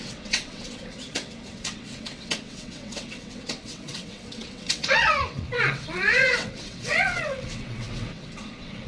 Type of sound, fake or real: fake